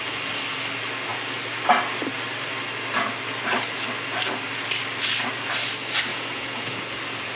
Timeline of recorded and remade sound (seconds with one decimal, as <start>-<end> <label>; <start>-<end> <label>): 0.0-6.1 recorded; 6.1-6.8 remade; 6.8-7.4 recorded